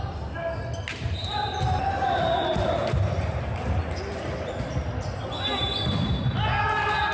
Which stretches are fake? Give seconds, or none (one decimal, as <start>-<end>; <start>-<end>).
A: 0.9-4.6